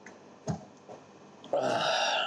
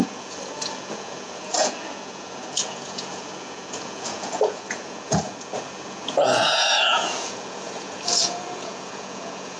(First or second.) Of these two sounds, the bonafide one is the first